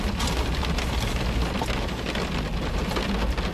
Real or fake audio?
real